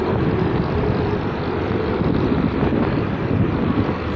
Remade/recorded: remade